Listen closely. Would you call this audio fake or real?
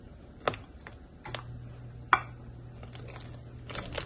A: real